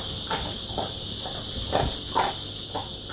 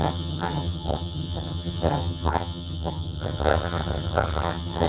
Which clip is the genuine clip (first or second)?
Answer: first